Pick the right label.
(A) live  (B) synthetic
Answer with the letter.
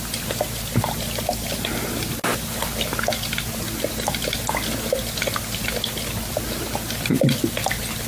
A